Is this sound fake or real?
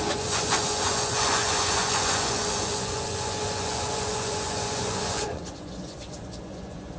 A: fake